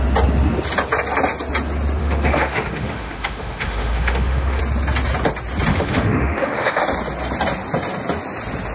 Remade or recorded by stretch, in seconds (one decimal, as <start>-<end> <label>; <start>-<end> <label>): 0.0-2.0 recorded; 2.0-4.6 remade; 4.6-5.7 recorded; 5.7-6.8 remade; 6.8-8.7 recorded